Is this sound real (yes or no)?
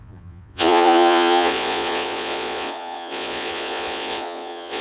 no